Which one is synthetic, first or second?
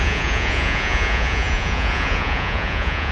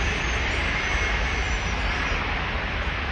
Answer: first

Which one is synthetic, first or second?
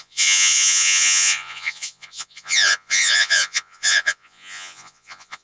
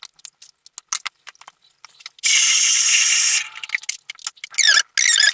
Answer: first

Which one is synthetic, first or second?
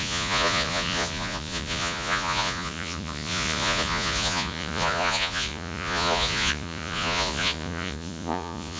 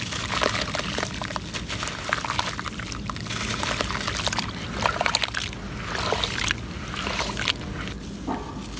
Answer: first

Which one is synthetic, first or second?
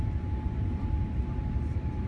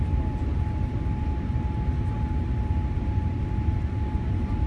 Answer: first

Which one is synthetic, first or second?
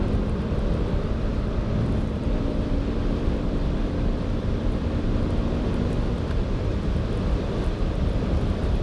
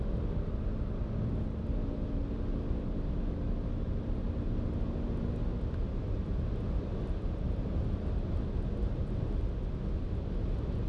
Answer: first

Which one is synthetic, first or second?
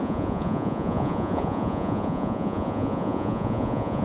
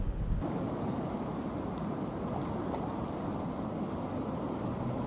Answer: first